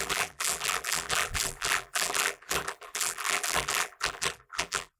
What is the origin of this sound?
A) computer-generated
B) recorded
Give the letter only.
A